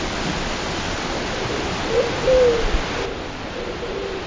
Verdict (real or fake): real